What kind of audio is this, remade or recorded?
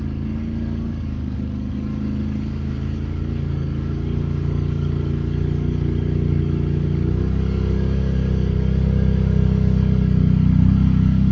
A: remade